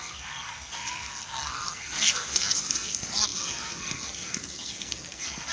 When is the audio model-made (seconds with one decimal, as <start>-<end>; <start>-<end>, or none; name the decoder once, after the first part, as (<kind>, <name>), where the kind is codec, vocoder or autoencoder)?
0.0-5.5 (codec, SNAC)